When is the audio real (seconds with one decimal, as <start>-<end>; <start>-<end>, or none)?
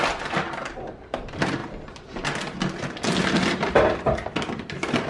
0.0-5.1